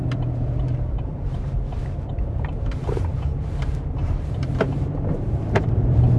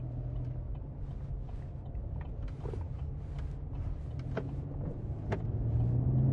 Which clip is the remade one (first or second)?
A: first